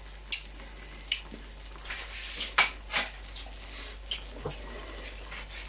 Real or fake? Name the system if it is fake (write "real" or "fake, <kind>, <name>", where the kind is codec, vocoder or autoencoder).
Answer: real